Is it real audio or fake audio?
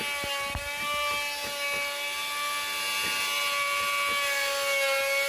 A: real